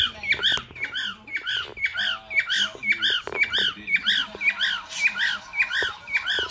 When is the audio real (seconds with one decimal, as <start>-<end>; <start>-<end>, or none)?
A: 0.0-6.5